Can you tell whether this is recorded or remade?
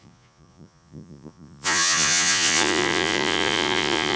remade